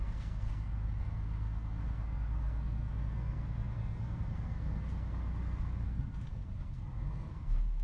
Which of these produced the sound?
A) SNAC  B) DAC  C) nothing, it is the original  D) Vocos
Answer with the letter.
A